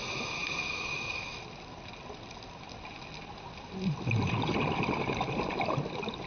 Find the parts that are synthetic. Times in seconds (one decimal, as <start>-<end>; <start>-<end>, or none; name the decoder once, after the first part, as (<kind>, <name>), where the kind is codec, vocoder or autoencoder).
0.0-0.4 (vocoder, BigVGAN v2); 4.2-6.3